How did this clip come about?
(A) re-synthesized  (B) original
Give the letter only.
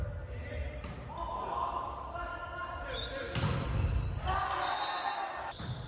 B